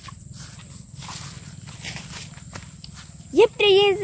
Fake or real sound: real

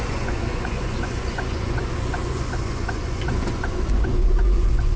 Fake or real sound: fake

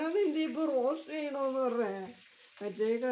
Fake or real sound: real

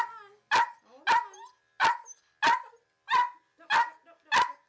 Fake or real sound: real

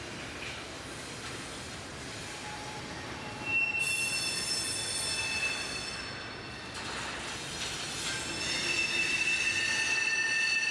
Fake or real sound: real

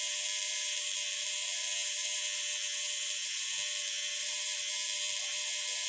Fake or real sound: real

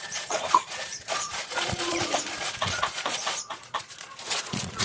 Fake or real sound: fake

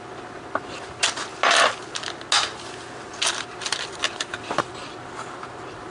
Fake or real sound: real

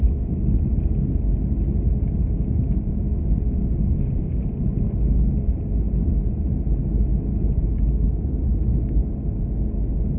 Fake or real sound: real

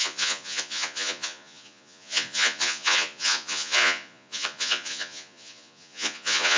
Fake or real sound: fake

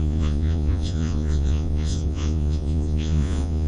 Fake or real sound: fake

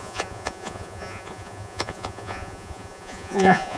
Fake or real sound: fake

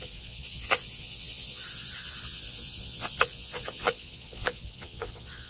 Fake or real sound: fake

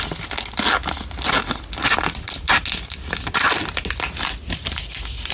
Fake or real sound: real